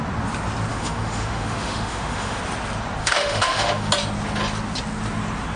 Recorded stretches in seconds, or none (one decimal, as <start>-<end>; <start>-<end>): 0.0-0.7; 2.4-3.0; 3.9-5.6